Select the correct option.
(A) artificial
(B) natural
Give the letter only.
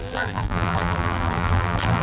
A